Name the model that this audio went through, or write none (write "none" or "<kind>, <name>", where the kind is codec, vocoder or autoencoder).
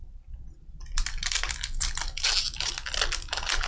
none